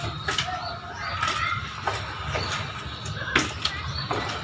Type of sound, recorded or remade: recorded